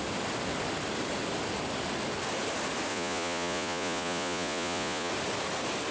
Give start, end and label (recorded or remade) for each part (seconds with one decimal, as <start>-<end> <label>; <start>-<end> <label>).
0.0-2.9 recorded; 2.9-5.1 remade; 5.1-5.9 recorded